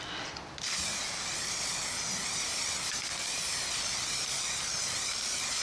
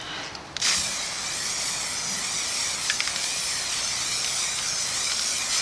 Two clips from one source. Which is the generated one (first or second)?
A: first